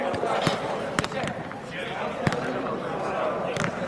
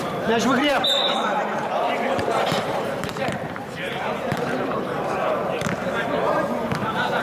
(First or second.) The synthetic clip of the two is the second